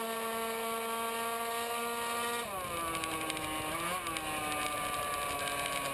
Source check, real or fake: real